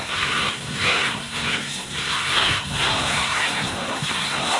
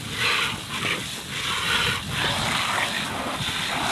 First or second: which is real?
second